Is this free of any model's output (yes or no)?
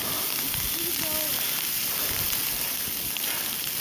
yes